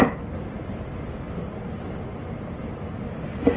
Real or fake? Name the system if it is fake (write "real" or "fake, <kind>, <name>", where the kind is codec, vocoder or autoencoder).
fake, vocoder, BigVGAN v2